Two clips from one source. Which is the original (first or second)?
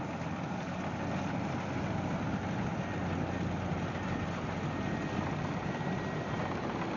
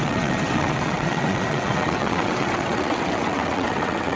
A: first